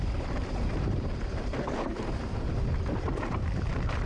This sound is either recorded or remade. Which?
remade